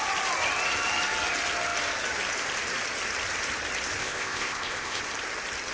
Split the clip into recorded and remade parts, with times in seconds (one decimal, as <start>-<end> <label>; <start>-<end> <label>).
0.0-4.0 recorded; 4.0-5.0 remade; 5.0-5.7 recorded